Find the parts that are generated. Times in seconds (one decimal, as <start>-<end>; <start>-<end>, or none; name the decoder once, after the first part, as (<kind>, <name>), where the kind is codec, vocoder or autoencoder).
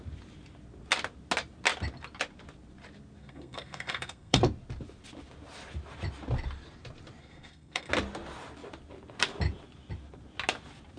3.2-4.4 (codec, SNAC); 7.2-7.9